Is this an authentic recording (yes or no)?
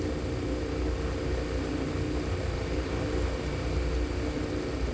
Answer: yes